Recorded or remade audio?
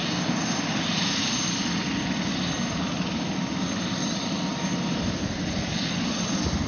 recorded